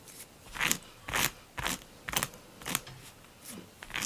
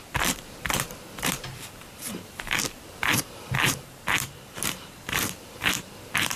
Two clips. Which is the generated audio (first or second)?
second